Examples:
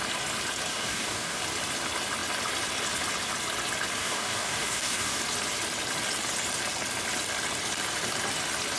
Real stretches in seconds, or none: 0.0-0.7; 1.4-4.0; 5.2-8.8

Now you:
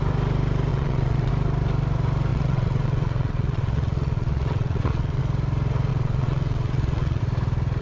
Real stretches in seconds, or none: 0.0-0.7; 1.3-2.3; 5.2-5.9; 7.2-7.8